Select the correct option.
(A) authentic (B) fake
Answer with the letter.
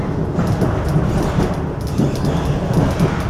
A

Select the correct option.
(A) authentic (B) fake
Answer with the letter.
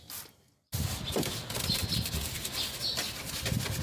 A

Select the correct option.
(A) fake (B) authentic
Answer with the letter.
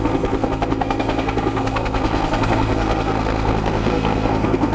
A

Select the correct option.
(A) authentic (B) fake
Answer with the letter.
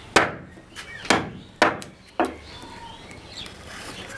A